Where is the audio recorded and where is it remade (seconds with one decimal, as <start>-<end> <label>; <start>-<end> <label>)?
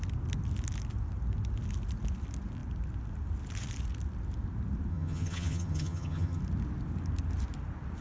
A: 0.0-4.9 recorded; 4.9-6.4 remade; 6.4-8.0 recorded